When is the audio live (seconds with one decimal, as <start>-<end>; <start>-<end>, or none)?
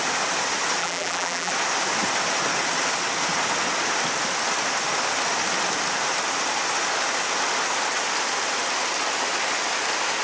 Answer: 0.0-0.8; 1.5-10.2